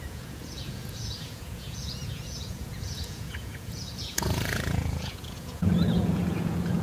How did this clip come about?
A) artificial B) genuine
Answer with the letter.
A